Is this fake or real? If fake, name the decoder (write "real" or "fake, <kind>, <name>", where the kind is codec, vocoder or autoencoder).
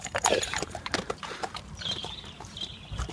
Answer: fake, vocoder, BigVGAN v2